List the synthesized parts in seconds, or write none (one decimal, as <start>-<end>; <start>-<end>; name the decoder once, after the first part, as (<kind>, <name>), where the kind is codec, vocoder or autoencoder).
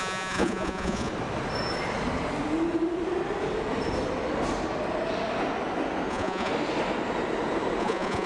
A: 0.0-1.1 (vocoder, Vocos); 6.1-6.5; 7.8-8.3